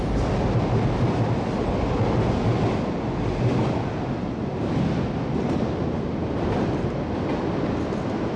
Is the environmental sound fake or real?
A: real